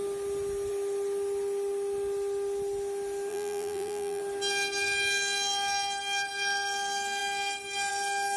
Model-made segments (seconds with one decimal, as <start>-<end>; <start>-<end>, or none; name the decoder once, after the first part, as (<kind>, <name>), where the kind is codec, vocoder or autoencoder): 3.3-4.2 (vocoder, BigVGAN v2)